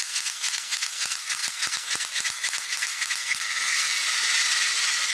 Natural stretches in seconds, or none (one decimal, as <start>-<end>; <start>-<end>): 3.9-5.1